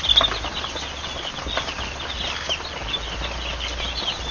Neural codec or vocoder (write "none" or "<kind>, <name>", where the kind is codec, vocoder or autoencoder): none